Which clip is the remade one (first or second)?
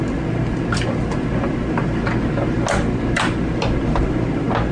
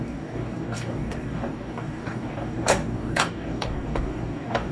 second